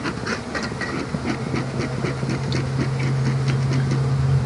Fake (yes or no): no